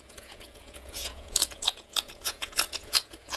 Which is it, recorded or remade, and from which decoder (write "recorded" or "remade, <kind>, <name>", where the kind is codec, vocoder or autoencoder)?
remade, vocoder, Vocos